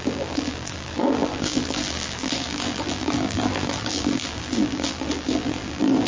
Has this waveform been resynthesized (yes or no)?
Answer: yes